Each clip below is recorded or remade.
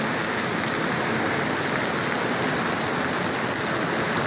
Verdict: recorded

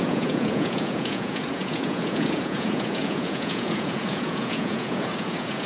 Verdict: remade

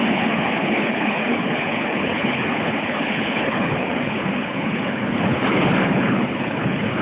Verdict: remade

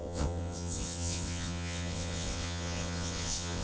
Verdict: remade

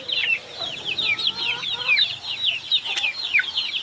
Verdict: recorded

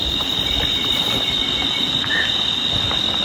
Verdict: recorded